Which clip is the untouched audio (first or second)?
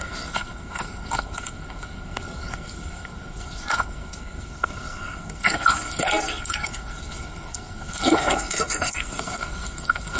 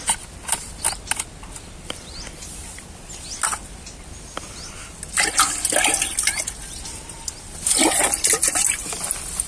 second